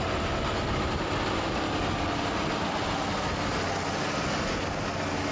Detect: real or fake real